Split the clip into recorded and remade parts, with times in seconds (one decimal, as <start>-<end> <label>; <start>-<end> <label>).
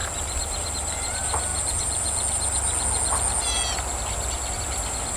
0.0-1.5 remade; 1.5-4.6 recorded; 4.6-5.2 remade